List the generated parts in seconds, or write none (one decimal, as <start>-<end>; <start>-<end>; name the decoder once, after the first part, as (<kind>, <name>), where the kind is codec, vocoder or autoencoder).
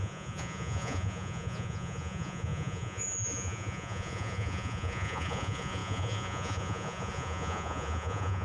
0.0-8.4 (vocoder, Vocos)